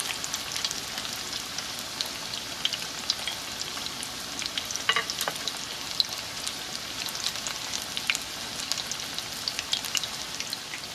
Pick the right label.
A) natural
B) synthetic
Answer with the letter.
A